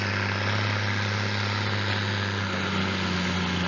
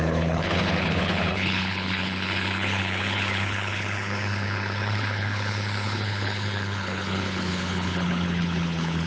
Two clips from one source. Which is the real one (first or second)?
first